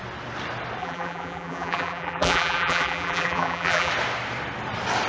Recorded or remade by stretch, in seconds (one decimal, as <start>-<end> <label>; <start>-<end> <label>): 0.0-0.8 recorded; 0.8-3.9 remade; 3.9-5.1 recorded